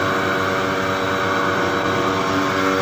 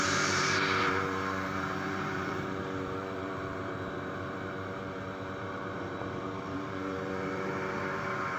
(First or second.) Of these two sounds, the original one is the first